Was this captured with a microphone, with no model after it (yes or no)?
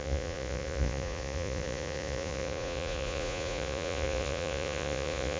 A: no